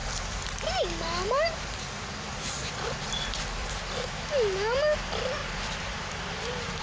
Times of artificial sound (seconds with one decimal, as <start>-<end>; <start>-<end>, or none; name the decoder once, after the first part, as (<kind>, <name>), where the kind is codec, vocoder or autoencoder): 0.0-3.7 (vocoder, BigVGAN v2); 5.4-6.8